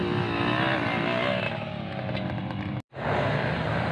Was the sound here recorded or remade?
recorded